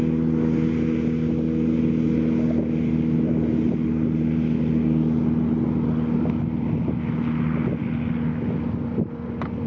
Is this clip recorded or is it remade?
recorded